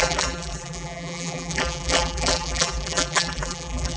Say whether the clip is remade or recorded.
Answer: remade